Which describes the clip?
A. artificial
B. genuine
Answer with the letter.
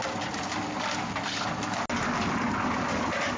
B